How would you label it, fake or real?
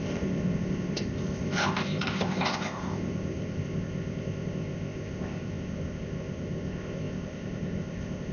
fake